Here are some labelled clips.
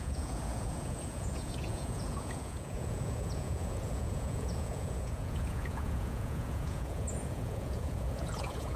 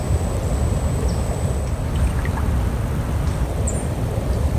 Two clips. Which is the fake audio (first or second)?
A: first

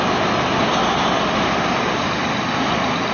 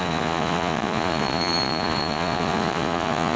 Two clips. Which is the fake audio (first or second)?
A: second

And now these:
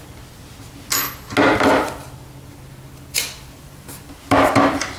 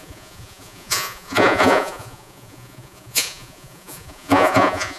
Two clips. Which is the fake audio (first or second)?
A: second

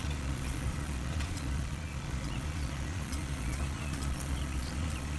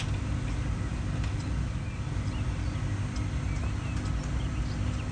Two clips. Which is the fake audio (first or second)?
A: first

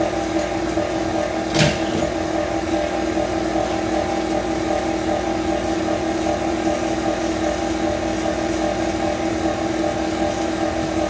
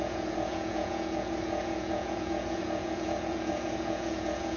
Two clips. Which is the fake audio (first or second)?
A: second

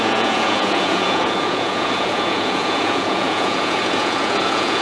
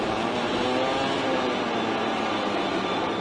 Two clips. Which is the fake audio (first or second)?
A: first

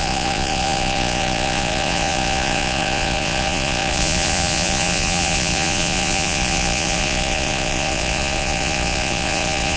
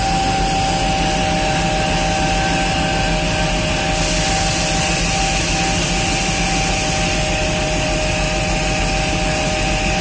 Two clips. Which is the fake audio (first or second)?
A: first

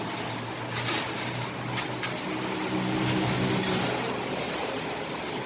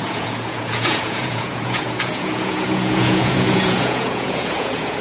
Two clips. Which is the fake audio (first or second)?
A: second